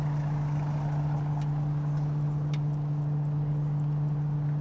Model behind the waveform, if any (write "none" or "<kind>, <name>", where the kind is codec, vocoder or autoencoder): none